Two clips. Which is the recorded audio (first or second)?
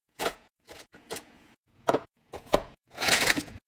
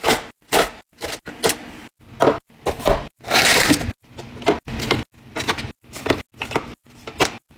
second